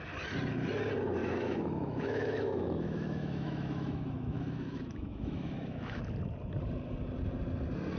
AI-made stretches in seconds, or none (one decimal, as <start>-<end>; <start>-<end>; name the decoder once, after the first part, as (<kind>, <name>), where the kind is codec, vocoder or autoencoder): 1.2-6.0 (autoencoder, DAC-VAE)

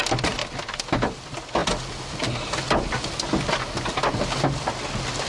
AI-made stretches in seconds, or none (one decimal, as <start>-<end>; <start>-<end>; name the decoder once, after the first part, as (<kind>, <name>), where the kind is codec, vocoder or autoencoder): none

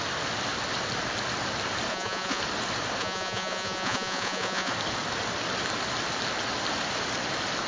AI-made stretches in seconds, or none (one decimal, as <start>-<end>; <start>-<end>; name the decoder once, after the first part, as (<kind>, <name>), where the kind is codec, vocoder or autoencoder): 1.9-2.4 (vocoder, Vocos); 3.0-4.7

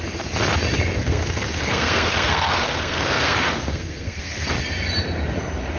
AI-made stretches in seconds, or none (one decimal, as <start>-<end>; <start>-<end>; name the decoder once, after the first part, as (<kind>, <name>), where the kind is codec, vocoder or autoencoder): 1.0-4.5 (codec, SNAC)

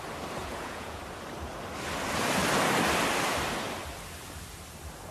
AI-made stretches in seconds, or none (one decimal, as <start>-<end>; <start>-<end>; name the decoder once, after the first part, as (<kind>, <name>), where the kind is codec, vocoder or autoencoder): 0.4-1.0 (vocoder, Vocos)